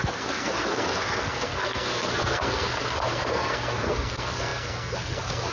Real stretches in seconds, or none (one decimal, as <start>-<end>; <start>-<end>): none